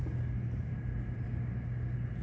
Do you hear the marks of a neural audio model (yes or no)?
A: no